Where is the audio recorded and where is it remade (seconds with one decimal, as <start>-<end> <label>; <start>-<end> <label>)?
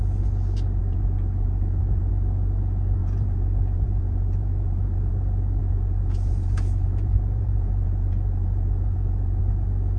0.0-0.8 recorded; 0.8-2.1 remade; 2.1-3.0 recorded; 3.0-5.1 remade; 5.1-5.6 recorded; 5.6-9.4 remade; 9.4-10.0 recorded